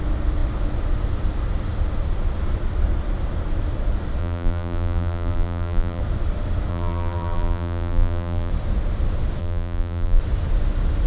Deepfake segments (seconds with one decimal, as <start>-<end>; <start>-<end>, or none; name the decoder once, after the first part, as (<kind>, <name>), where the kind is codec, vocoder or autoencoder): 4.2-6.0 (vocoder, BigVGAN v2); 6.7-8.5; 9.4-10.2